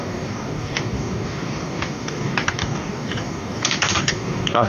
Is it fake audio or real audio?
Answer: fake